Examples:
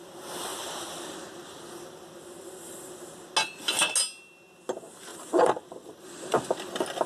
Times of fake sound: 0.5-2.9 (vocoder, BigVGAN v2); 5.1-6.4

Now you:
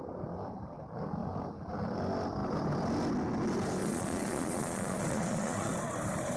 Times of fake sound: 3.8-5.7 (vocoder, Vocos)

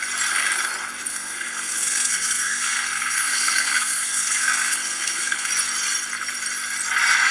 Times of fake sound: 1.1-5.5 (codec, SNAC)

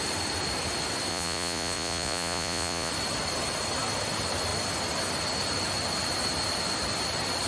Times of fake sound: 1.1-2.9 (vocoder, Vocos)

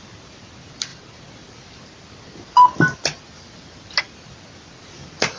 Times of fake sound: none